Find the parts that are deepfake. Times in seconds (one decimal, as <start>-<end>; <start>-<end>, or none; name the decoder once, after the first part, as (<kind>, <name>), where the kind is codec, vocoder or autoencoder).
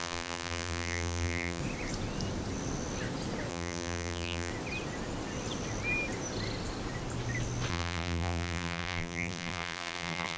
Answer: 0.0-1.6 (vocoder, BigVGAN v2); 3.5-4.5; 7.7-10.4